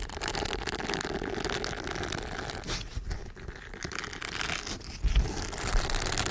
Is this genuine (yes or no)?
yes